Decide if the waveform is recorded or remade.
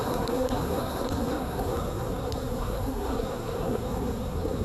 remade